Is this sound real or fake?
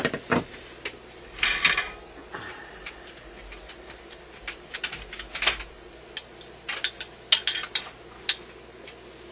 real